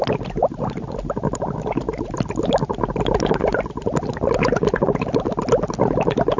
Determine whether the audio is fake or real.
real